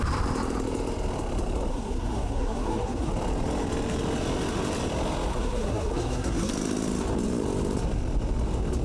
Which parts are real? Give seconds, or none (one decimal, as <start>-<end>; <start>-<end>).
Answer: 0.0-1.7; 3.1-5.3; 6.5-8.8